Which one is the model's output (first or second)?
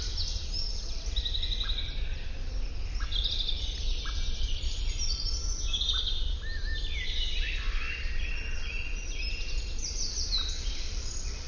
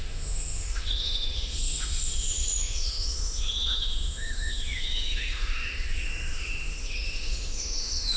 second